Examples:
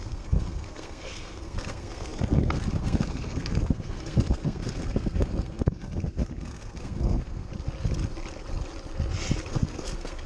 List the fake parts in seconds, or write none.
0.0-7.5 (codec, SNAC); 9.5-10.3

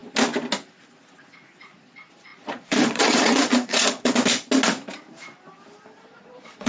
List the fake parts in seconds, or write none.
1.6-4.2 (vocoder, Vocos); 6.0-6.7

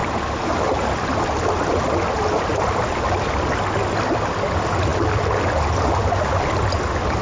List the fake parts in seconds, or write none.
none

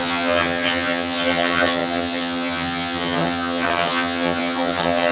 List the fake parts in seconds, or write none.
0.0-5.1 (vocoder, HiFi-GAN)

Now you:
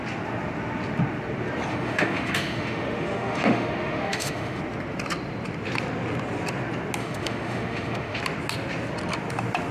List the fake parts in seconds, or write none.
1.7-4.6 (autoencoder, DAC-VAE); 7.0-8.2